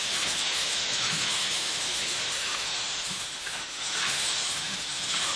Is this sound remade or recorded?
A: remade